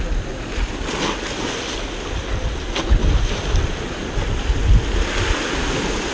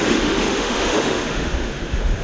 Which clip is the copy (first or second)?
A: second